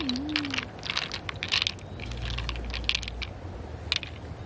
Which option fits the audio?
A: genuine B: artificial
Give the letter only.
A